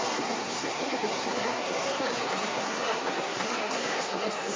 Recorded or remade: remade